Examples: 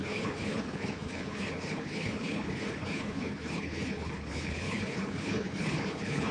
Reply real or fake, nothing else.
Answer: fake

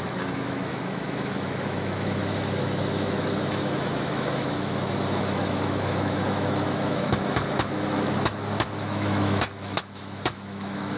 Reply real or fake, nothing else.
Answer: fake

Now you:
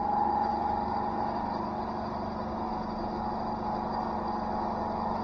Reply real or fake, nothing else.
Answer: real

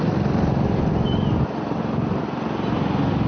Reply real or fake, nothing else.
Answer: real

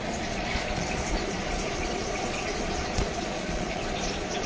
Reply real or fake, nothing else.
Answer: fake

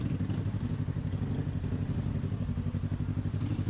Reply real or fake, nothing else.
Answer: real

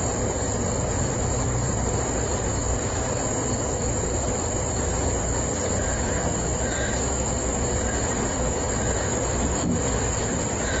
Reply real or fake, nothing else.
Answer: fake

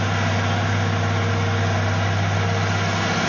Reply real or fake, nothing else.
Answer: real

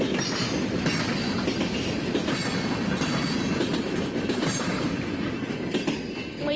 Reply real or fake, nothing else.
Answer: real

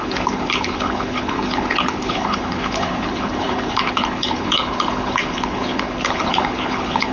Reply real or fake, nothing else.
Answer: fake